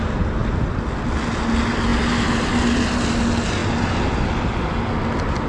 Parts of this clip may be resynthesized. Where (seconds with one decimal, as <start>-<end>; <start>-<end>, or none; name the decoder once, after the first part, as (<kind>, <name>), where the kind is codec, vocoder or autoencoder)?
none